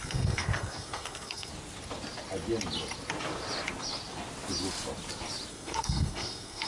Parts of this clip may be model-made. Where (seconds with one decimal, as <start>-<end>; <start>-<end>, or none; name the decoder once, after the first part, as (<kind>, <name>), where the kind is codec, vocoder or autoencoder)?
0.0-1.5 (codec, SNAC); 5.5-6.7